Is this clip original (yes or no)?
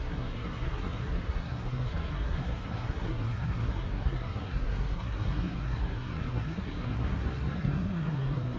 no